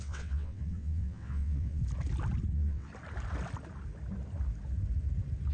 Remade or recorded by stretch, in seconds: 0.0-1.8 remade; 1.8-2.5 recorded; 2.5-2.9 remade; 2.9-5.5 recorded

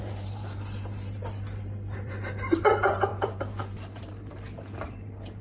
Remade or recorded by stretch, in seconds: 0.0-5.4 remade

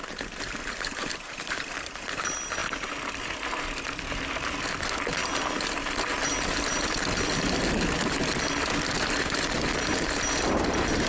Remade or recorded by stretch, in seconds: 0.0-11.1 recorded

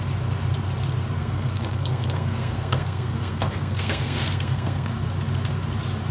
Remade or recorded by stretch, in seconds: 0.0-1.2 recorded; 1.2-4.9 remade; 4.9-6.1 recorded